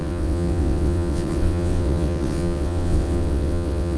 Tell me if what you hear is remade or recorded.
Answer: remade